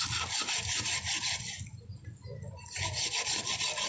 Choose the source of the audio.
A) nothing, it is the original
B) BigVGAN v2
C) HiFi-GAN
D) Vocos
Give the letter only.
A